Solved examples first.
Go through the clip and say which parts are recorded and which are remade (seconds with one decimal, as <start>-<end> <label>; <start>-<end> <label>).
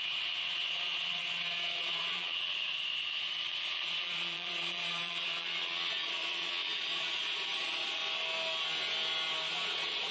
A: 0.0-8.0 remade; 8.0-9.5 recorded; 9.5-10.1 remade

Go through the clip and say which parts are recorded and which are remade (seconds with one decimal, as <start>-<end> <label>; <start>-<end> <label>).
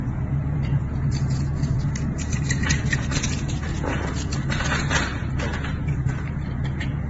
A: 0.0-7.1 remade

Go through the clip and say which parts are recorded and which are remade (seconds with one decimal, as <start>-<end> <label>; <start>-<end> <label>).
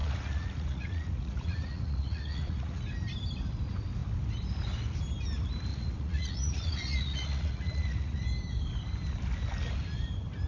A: 0.0-2.8 remade; 2.8-5.7 recorded; 5.7-8.2 remade; 8.2-10.5 recorded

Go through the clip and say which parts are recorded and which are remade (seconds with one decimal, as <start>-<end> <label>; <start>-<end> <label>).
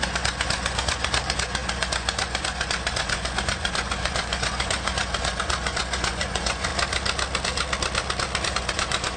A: 0.0-6.7 remade; 6.7-8.5 recorded; 8.5-9.2 remade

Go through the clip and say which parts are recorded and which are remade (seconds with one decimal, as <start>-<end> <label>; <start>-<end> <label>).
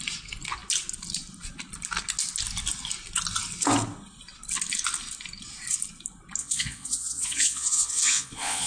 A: 0.0-6.4 recorded; 6.4-8.7 remade